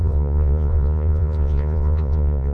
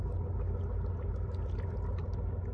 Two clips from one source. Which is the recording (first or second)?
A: second